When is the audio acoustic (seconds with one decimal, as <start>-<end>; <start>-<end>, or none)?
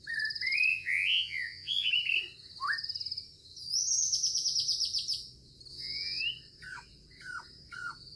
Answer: 0.0-0.7; 1.9-5.7; 6.2-8.2